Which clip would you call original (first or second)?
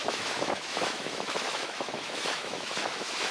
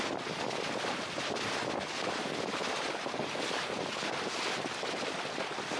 second